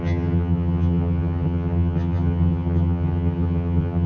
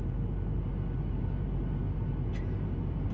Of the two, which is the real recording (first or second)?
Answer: second